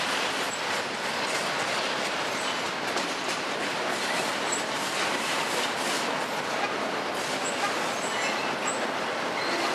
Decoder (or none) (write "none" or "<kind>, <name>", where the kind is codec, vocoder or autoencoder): none